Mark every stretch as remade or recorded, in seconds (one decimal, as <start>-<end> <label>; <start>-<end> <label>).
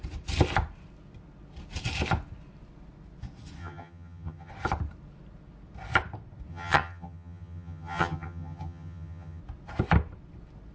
0.0-3.6 recorded; 3.6-4.5 remade; 4.5-6.5 recorded; 6.5-9.4 remade; 9.4-10.7 recorded